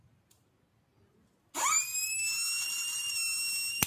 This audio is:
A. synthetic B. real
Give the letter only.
B